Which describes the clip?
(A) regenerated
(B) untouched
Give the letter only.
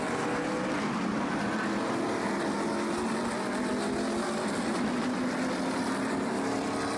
B